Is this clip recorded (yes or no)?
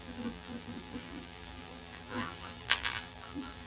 no